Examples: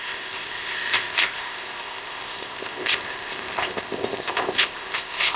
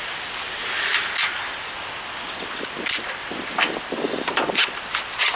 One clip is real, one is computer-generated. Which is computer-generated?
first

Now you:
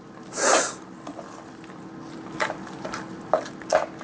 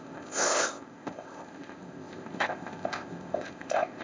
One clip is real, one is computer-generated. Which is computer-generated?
second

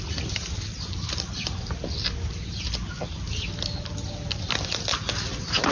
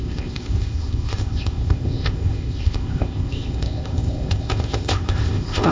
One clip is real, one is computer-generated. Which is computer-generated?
second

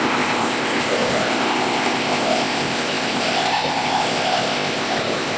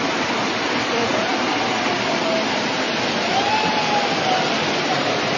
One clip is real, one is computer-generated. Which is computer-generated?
first